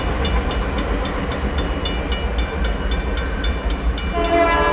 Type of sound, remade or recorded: recorded